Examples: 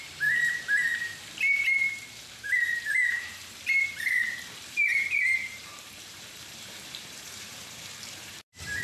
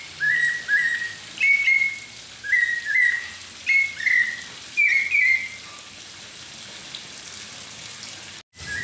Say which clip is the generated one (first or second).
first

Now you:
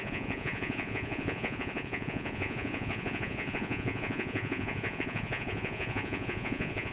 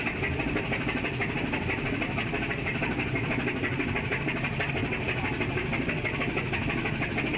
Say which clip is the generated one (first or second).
first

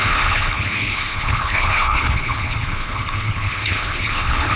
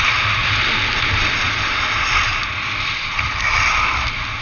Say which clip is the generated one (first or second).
first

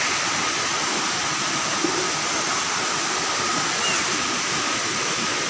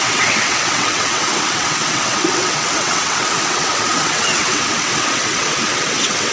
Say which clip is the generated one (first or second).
second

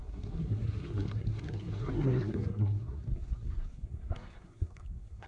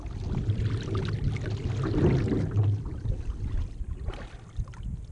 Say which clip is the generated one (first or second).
first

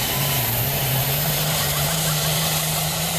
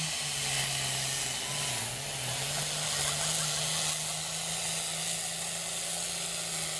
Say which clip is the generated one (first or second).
first